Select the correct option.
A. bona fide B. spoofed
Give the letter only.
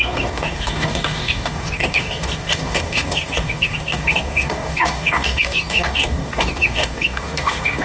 B